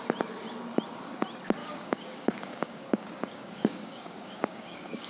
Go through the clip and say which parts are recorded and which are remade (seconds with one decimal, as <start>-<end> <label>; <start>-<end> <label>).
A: 0.0-1.6 recorded; 1.6-5.1 remade